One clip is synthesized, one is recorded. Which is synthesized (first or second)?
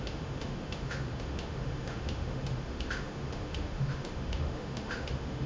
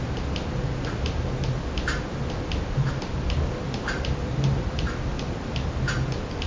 first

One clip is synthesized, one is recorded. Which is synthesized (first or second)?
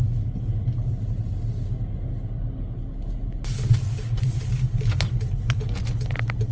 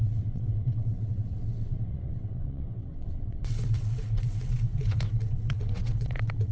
second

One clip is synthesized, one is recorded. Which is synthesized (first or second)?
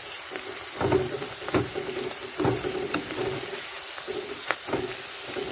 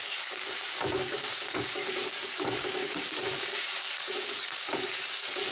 second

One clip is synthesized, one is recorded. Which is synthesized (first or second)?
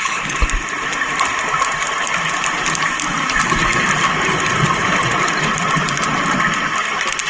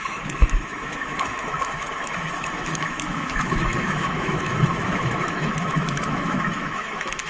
second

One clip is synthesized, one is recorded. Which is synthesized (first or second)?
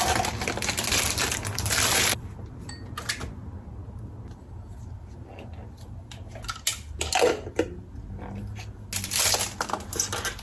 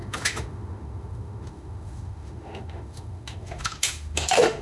second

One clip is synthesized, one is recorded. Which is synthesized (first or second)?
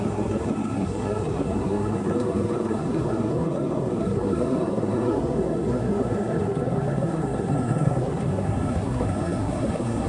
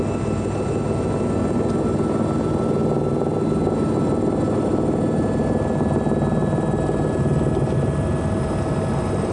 first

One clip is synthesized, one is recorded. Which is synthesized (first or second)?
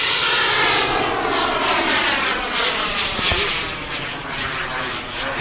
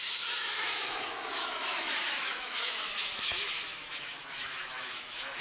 second